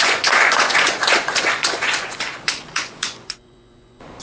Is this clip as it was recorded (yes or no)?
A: no